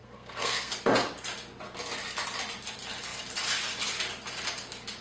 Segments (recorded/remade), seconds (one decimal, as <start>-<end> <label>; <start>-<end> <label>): 0.0-0.7 remade; 0.7-5.0 recorded